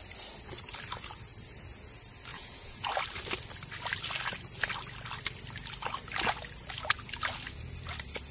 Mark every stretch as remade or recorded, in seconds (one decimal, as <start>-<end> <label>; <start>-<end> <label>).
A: 0.0-2.3 recorded; 2.3-2.9 remade; 2.9-8.3 recorded